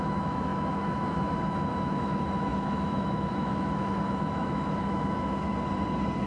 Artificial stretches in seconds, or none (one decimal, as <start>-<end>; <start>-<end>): 0.0-5.5